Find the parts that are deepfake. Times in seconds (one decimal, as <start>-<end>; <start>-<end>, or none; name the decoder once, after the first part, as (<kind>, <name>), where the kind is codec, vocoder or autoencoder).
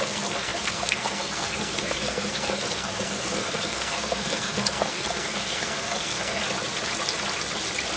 0.0-6.4 (codec, SNAC)